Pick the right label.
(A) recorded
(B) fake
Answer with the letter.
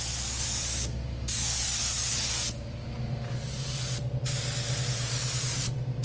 A